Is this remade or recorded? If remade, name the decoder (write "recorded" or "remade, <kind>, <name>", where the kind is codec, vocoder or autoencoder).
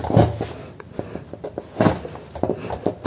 recorded